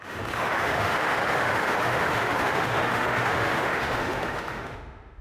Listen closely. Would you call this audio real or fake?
fake